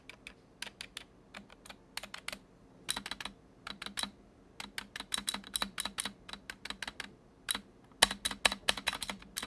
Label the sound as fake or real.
real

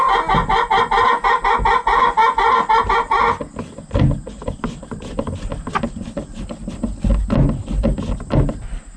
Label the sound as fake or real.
real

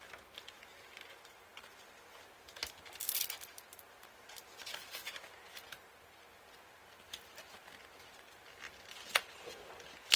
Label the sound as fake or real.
real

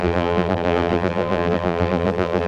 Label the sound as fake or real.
fake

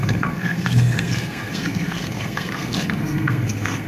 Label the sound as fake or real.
fake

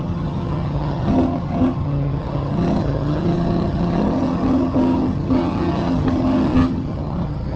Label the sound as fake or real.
fake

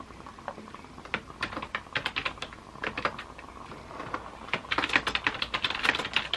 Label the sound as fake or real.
real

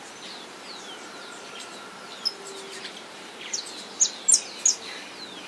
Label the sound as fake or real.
real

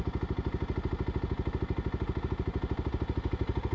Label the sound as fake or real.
real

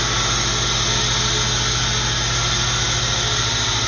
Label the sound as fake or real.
real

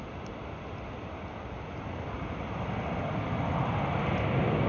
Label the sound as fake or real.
real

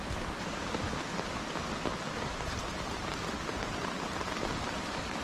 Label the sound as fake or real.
real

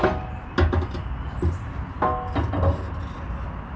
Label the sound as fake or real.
real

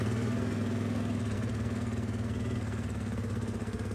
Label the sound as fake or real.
fake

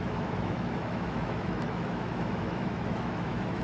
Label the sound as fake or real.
fake